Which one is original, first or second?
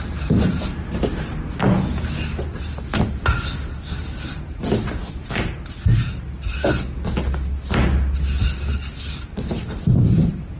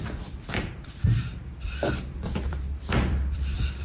first